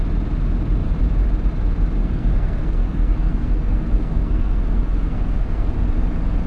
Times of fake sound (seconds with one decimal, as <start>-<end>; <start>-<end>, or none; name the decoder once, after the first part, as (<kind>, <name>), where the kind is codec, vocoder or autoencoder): 2.0-5.7 (codec, SNAC)